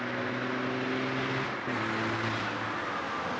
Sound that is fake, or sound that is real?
real